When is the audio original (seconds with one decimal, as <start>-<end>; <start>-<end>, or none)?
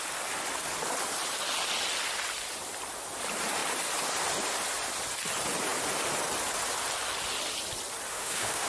0.0-8.1